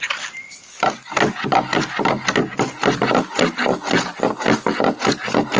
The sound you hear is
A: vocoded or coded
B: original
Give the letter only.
B